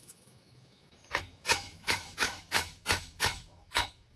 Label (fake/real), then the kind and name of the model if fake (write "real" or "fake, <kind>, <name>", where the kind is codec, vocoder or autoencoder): fake, autoencoder, DAC-VAE